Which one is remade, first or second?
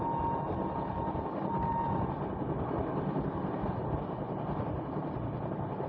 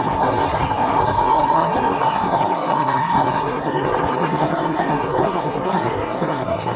second